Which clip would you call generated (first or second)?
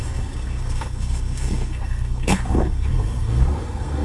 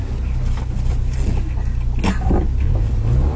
first